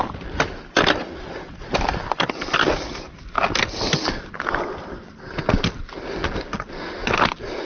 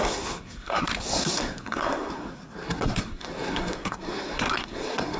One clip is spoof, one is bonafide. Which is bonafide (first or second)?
first